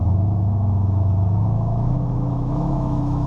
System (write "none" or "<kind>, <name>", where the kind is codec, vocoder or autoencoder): autoencoder, DAC-VAE